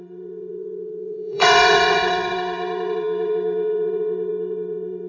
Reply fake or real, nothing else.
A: fake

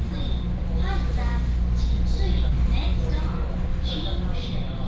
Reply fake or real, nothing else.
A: real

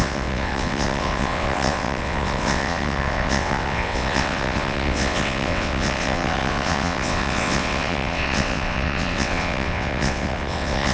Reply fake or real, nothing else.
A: fake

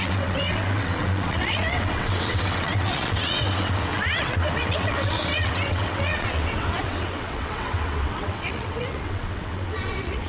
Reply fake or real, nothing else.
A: fake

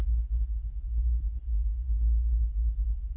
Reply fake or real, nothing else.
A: real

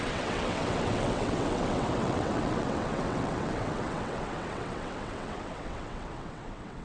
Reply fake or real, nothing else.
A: fake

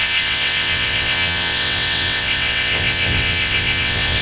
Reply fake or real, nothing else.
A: fake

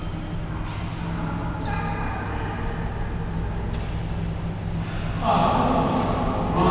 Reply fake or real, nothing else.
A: real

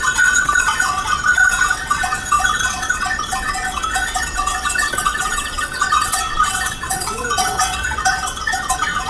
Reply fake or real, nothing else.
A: fake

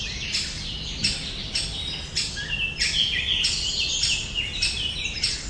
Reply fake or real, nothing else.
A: real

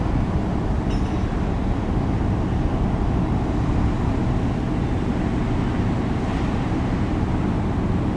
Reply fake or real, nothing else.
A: real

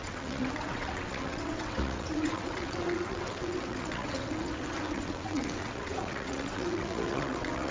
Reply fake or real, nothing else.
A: fake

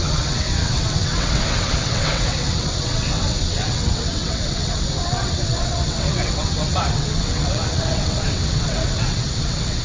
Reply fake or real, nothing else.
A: fake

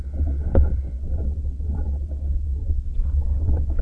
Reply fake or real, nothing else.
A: fake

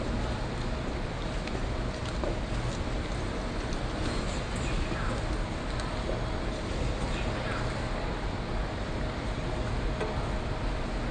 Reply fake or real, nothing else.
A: real